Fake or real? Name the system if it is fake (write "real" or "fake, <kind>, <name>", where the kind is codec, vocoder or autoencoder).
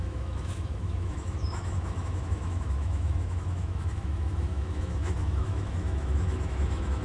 fake, autoencoder, DAC-VAE